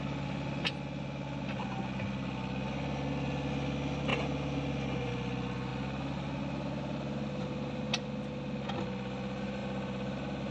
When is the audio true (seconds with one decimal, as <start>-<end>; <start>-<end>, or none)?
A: 0.0-10.5